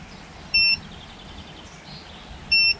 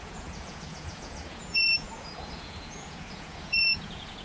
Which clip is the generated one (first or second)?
second